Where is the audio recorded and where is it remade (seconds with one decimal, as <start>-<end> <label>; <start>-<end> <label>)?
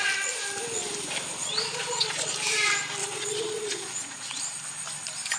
0.0-1.4 recorded; 1.4-2.3 remade; 2.3-3.0 recorded; 3.0-4.4 remade; 4.4-5.4 recorded